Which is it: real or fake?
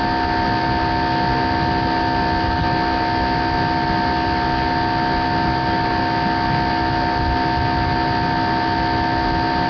real